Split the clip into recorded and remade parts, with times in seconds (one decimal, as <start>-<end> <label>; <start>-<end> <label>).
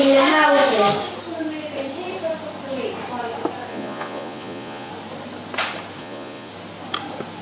0.0-3.7 recorded; 3.7-4.9 remade; 4.9-6.0 recorded; 6.0-6.5 remade; 6.5-7.4 recorded